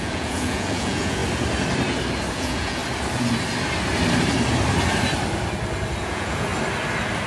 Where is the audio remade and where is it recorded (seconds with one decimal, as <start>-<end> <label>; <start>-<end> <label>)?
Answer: 0.0-1.2 remade; 1.2-2.3 recorded; 2.3-2.8 remade; 2.8-6.0 recorded; 6.0-6.5 remade; 6.5-7.3 recorded